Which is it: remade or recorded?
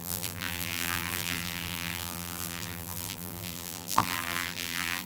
remade